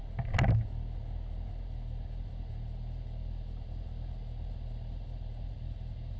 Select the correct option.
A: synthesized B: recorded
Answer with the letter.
B